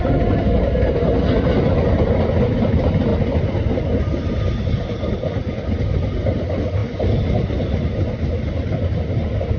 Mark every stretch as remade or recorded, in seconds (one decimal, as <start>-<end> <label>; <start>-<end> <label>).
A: 0.0-9.6 recorded